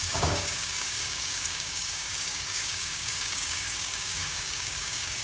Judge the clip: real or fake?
fake